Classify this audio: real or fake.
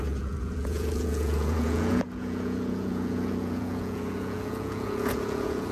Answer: fake